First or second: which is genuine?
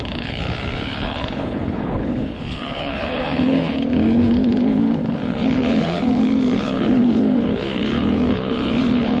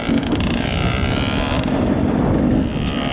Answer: second